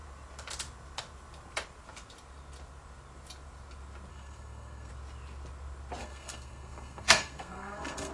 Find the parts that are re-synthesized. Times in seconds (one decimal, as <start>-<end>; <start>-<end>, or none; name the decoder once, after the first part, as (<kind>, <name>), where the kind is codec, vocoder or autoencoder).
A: 4.1-4.9 (codec, SNAC); 6.0-8.1